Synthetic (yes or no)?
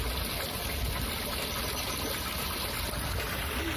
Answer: no